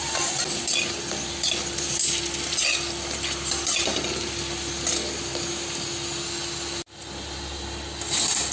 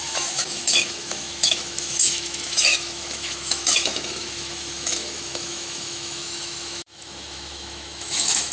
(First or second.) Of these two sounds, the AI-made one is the second